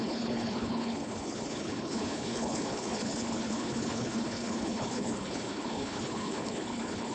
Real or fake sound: fake